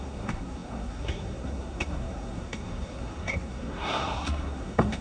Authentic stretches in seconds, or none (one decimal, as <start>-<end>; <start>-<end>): none